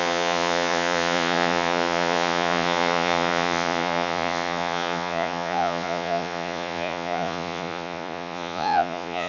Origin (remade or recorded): remade